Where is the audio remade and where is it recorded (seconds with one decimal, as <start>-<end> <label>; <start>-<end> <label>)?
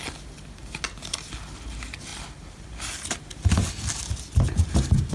0.0-5.1 recorded